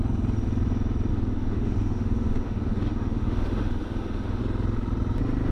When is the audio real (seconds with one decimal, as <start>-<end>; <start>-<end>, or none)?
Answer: 0.0-1.1; 4.4-5.5